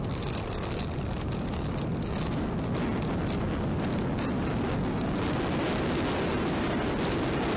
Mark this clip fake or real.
real